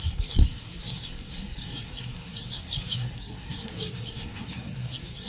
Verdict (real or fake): fake